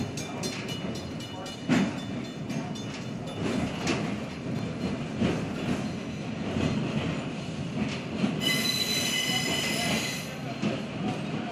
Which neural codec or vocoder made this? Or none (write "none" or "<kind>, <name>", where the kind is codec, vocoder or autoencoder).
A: none